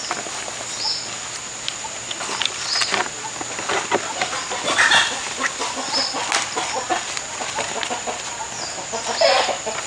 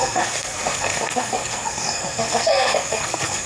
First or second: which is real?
first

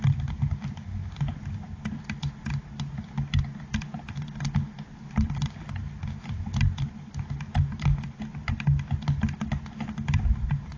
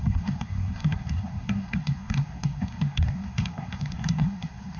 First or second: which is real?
first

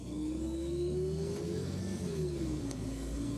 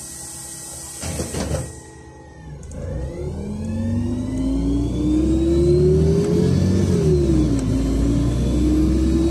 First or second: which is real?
second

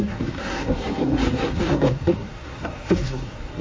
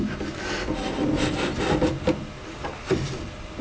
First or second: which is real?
second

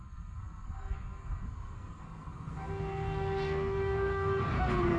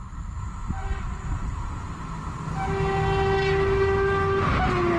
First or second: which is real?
second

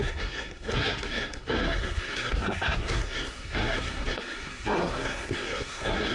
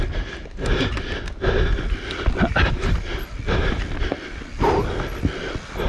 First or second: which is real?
second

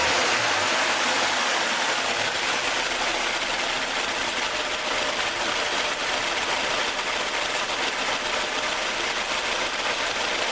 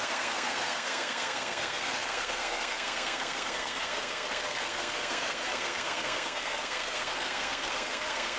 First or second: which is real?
first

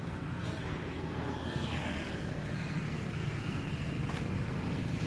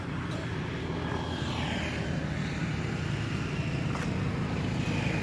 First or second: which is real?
second